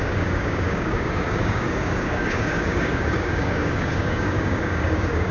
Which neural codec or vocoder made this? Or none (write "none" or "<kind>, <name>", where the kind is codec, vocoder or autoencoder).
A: codec, DAC